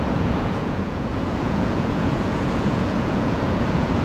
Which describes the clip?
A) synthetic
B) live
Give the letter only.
A